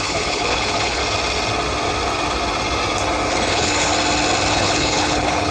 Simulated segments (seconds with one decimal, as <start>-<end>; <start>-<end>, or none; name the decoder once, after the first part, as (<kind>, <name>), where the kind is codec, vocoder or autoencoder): 0.0-1.0 (codec, HILCodec); 3.5-3.9; 4.5-5.5